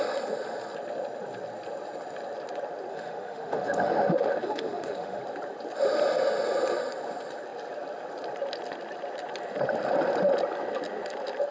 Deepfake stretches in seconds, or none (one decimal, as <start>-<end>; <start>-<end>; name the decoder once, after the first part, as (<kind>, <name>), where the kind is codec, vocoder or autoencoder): 2.9-5.2 (autoencoder, DAC-VAE)

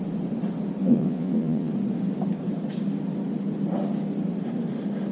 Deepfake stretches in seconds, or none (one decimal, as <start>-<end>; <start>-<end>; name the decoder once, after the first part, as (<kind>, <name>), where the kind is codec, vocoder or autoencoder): 0.8-1.7 (vocoder, WaveNeXt)